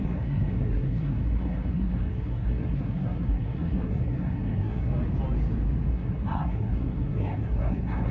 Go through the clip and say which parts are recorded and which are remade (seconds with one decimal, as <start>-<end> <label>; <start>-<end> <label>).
0.0-4.9 remade; 4.9-5.9 recorded; 5.9-8.1 remade